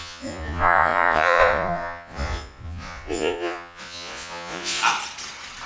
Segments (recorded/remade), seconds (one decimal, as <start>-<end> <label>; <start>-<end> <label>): 0.0-4.8 remade; 4.8-5.7 recorded